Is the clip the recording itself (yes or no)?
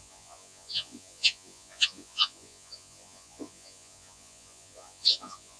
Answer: no